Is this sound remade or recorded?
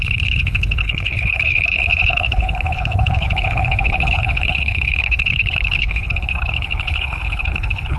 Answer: remade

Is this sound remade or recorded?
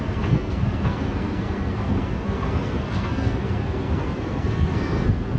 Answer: remade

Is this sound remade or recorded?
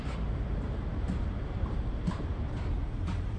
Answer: remade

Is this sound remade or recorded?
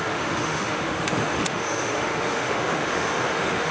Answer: remade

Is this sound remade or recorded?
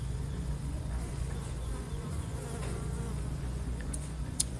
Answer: remade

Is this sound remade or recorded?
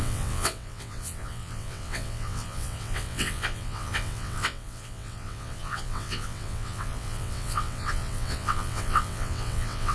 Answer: remade